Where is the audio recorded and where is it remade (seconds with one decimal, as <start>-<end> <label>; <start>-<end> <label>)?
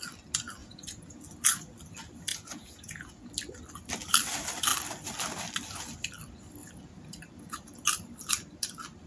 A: 0.0-0.6 recorded; 0.6-1.2 remade; 1.2-2.3 recorded; 2.3-3.3 remade; 3.3-9.1 recorded